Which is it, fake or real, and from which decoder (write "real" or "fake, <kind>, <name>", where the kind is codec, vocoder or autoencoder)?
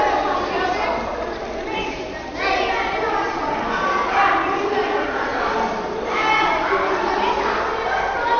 real